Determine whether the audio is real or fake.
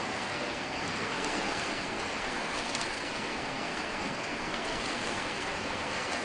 fake